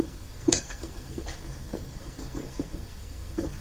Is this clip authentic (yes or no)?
no